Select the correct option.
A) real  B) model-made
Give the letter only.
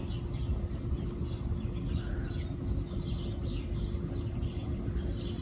A